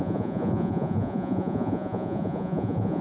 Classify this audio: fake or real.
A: fake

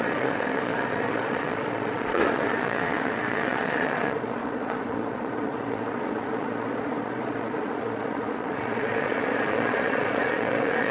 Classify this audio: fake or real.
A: fake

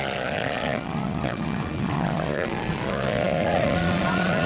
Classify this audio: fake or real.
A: fake